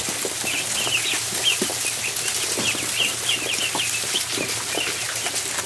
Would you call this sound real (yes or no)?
yes